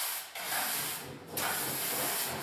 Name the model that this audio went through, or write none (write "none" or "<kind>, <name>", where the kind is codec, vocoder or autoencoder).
none